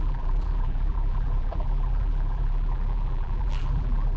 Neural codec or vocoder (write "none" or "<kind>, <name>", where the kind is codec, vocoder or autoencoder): vocoder, BigVGAN v2